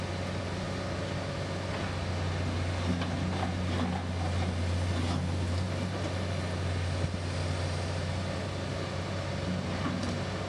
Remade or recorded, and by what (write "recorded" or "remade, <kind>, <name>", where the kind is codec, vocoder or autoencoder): recorded